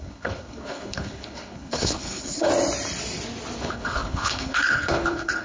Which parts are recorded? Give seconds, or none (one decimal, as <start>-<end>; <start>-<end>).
2.5-3.6